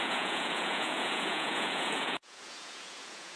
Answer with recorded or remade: remade